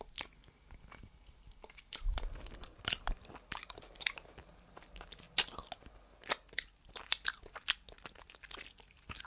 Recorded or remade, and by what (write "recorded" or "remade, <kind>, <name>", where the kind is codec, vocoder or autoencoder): recorded